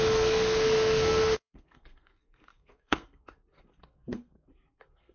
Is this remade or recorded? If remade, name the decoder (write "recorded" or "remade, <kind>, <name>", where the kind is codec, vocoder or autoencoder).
remade, codec, SNAC